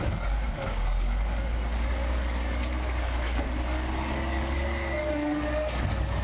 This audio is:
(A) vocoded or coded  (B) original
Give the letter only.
A